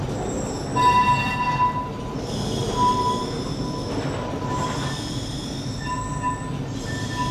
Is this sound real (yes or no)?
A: yes